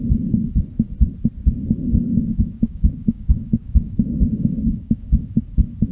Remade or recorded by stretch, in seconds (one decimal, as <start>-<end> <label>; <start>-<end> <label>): 0.0-1.9 recorded; 1.9-5.4 remade; 5.4-5.9 recorded

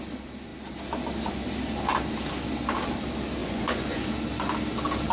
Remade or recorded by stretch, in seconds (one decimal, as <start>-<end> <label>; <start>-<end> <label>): 0.0-3.4 recorded; 3.4-4.1 remade; 4.1-5.1 recorded

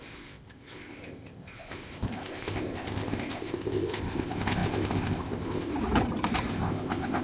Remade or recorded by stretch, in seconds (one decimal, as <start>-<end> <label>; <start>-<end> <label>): 0.0-5.7 remade; 5.7-6.5 recorded; 6.5-7.2 remade

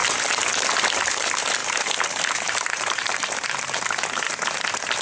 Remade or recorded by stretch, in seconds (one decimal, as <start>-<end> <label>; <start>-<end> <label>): 0.0-1.6 recorded; 1.6-4.6 remade; 4.6-5.0 recorded